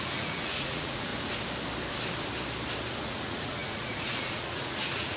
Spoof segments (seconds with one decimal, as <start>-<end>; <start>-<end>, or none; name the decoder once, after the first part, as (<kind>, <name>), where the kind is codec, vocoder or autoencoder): 0.0-1.1 (vocoder, Vocos); 3.0-5.2